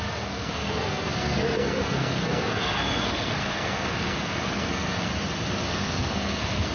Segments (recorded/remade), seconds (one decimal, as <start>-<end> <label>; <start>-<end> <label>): 0.0-5.1 remade; 5.1-5.7 recorded; 5.7-6.7 remade